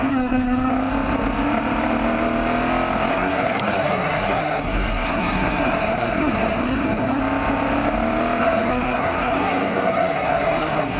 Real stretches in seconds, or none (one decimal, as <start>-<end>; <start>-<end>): 0.7-3.1; 7.2-8.4